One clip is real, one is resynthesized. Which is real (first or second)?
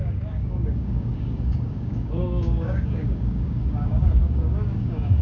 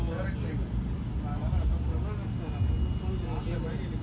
second